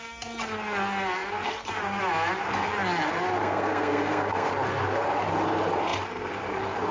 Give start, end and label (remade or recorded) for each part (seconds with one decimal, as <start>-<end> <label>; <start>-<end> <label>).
0.0-3.4 recorded; 3.4-4.5 remade; 4.5-6.9 recorded